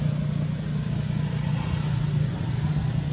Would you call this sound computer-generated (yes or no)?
no